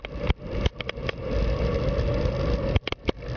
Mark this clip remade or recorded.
recorded